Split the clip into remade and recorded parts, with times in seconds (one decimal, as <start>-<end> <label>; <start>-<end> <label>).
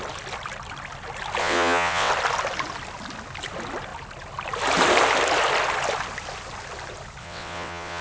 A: 0.0-1.4 recorded; 1.4-2.1 remade; 2.1-7.2 recorded; 7.2-8.0 remade